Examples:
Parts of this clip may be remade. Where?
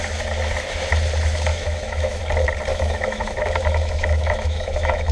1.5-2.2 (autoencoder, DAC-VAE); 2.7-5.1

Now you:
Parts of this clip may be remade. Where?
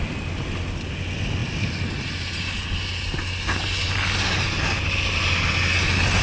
none